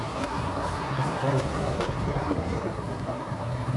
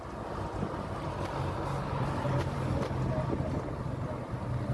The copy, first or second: first